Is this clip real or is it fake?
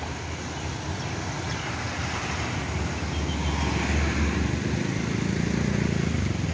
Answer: real